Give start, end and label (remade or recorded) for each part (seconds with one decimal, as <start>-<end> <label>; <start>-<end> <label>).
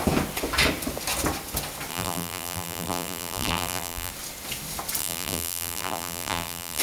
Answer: 0.0-1.9 recorded; 1.9-4.1 remade; 4.1-5.0 recorded; 5.0-6.8 remade